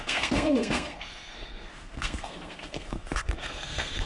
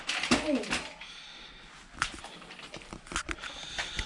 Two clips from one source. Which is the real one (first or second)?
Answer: second